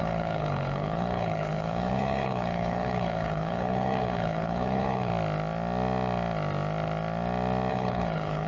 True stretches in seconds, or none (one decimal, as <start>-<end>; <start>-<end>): 5.1-7.7